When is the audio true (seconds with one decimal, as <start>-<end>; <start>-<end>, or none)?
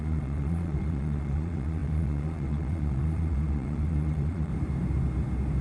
4.5-5.6